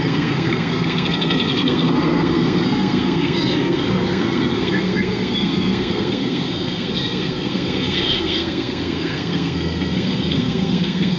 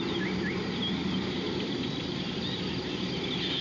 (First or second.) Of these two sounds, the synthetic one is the first